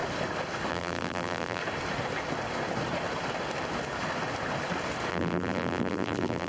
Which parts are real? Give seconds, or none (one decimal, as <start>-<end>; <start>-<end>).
0.0-0.7; 1.6-5.1